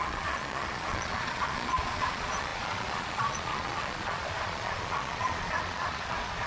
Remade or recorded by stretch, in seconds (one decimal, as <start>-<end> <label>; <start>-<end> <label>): 0.0-6.5 remade